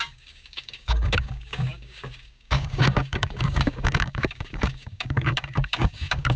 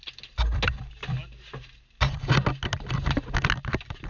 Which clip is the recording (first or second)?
second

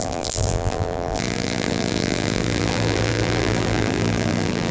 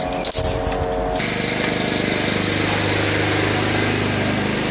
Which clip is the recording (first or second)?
second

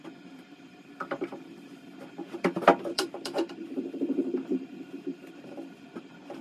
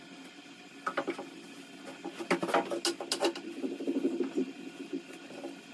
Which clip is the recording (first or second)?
second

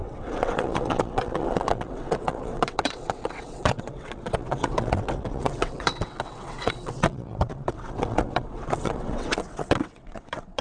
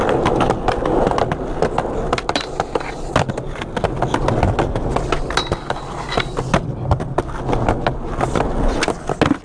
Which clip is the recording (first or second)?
second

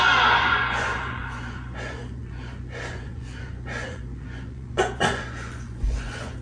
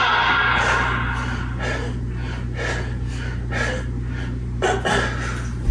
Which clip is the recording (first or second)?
second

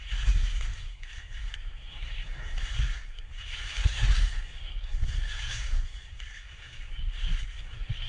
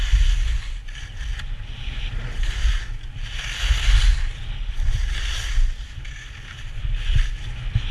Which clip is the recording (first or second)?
second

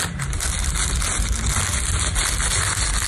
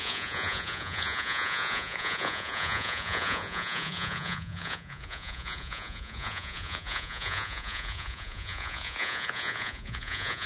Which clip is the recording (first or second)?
first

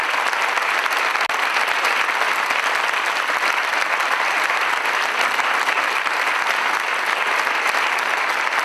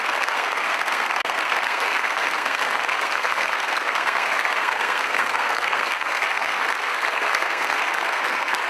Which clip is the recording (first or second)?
first